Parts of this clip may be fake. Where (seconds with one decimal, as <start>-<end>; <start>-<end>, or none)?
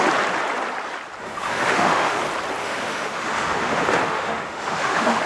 1.2-2.2; 2.6-5.3